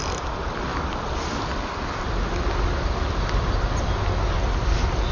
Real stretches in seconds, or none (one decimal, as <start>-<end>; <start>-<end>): 0.0-5.1